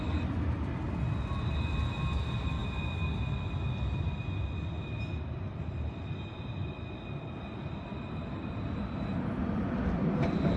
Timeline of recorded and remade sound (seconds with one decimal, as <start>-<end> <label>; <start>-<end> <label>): 0.0-10.6 recorded